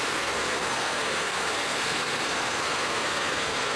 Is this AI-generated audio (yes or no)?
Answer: yes